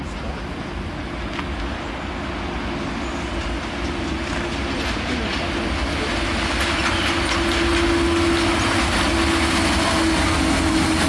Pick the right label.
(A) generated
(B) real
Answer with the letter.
B